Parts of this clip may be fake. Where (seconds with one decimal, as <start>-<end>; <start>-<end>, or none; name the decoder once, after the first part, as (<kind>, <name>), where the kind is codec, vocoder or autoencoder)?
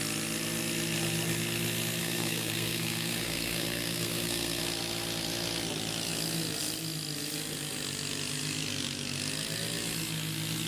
2.0-4.6 (codec, SNAC)